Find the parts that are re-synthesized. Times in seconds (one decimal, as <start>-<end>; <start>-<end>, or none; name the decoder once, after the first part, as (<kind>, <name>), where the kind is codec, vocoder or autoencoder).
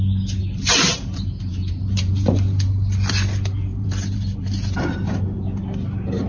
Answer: 0.4-2.1 (vocoder, BigVGAN v2); 3.7-5.2